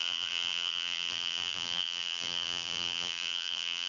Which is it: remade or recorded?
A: remade